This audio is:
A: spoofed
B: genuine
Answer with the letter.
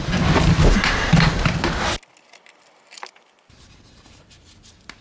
B